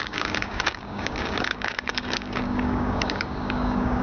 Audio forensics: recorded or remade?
remade